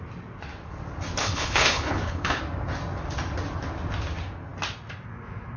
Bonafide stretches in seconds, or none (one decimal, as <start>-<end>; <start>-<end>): 0.0-1.2; 2.4-5.6